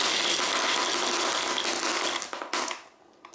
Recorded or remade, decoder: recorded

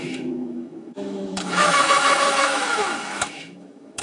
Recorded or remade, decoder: remade, autoencoder, DAC-VAE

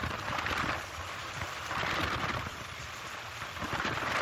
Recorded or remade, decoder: recorded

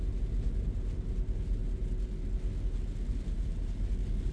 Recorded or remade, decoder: recorded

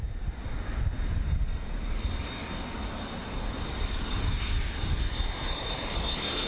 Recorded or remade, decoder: recorded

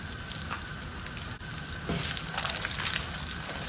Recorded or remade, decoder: recorded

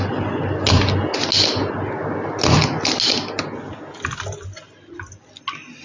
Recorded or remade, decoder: recorded